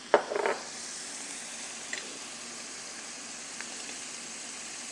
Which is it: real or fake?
real